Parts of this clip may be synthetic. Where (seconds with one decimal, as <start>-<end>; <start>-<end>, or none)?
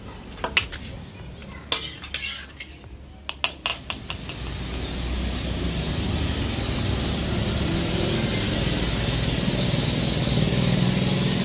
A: none